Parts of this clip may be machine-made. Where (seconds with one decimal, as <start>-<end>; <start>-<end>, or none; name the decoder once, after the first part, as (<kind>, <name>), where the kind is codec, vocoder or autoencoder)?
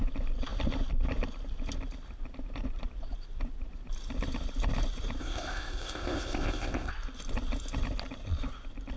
5.2-6.9 (codec, ZipCodec)